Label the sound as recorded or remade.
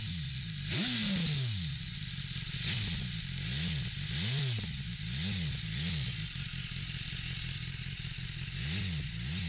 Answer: recorded